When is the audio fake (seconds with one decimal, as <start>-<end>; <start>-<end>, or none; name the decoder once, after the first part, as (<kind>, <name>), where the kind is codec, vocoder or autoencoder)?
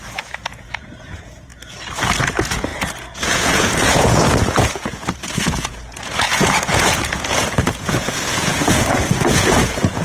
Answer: 0.0-1.5 (vocoder, Vocos); 2.2-10.0